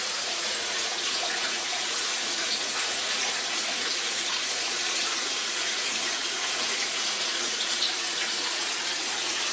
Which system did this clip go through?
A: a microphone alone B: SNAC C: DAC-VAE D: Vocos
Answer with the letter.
D